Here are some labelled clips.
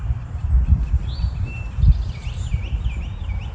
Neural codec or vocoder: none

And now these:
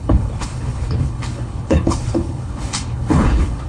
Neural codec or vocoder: codec, HILCodec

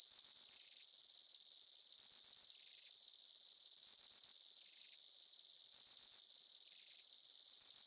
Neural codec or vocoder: none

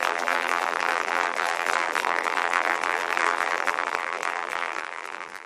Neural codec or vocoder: vocoder, BigVGAN v2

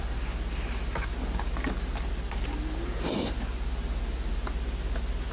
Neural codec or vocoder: none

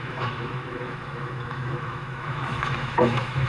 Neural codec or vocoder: autoencoder, DAC-VAE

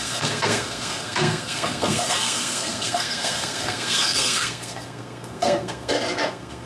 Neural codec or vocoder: codec, SNAC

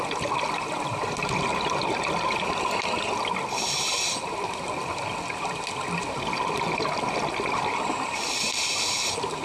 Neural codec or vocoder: none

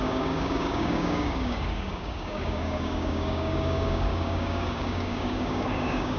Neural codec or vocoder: codec, DAC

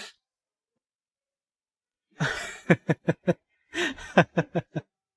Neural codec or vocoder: vocoder, BigVGAN v2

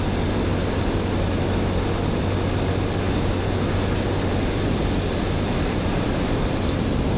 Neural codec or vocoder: none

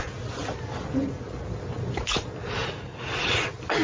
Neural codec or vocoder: none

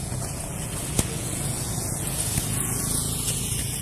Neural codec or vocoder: vocoder, Vocos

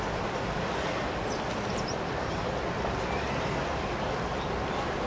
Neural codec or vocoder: none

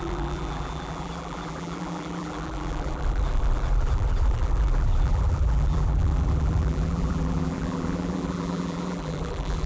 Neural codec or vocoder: vocoder, BigVGAN v2